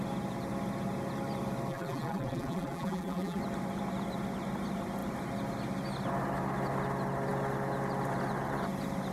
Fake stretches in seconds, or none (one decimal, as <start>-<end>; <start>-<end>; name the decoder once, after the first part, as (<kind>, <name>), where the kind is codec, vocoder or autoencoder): 1.7-3.4 (vocoder, BigVGAN v2)